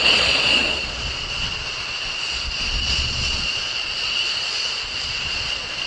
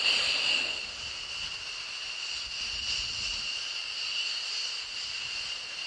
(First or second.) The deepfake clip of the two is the first